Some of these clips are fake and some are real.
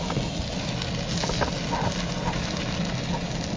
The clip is real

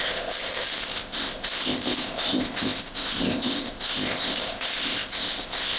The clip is fake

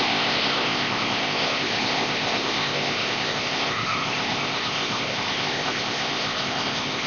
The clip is fake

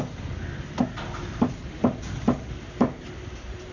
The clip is real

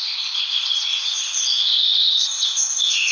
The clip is fake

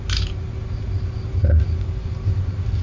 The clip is real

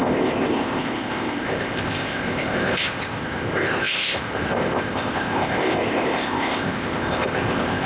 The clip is fake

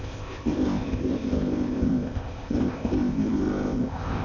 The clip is fake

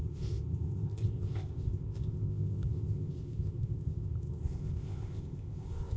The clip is fake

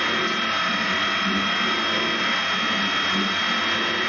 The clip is real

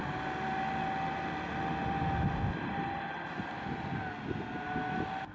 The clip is real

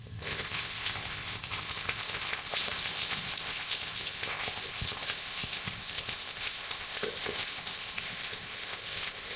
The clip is fake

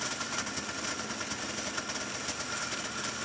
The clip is real